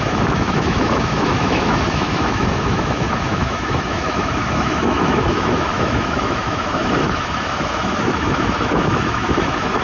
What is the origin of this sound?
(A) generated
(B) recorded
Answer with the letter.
A